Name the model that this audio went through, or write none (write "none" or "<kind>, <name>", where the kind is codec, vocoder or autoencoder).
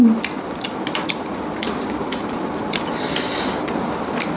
none